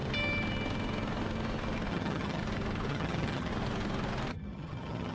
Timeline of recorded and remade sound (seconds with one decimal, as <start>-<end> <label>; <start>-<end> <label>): 0.0-1.9 recorded; 1.9-2.4 remade; 2.4-2.9 recorded; 2.9-3.5 remade; 3.5-4.3 recorded; 4.3-5.1 remade